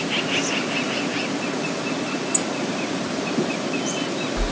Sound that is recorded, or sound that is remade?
recorded